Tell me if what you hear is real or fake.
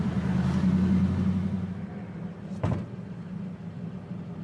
real